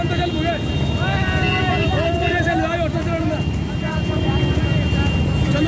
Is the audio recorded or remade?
recorded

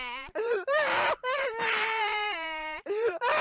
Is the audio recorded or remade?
remade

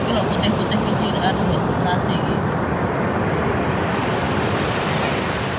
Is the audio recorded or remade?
remade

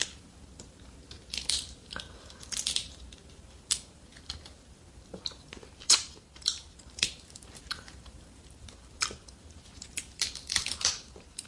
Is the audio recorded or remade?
remade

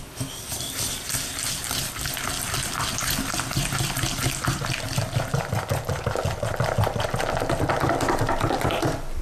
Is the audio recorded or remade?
recorded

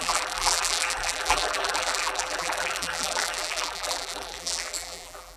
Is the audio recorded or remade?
remade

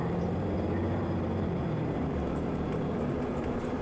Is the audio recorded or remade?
remade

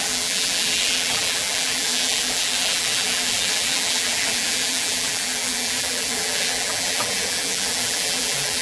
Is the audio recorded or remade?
remade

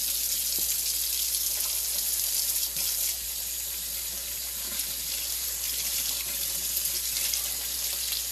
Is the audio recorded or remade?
recorded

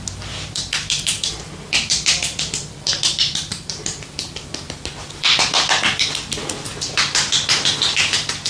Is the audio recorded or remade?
remade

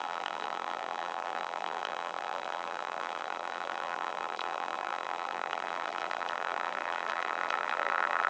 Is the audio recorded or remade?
remade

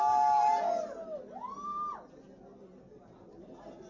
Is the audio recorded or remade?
recorded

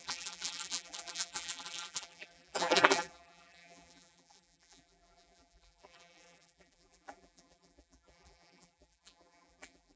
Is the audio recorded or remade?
remade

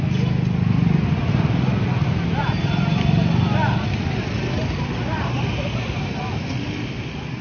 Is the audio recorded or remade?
recorded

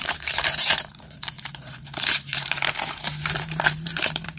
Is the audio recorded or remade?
remade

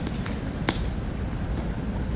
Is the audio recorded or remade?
recorded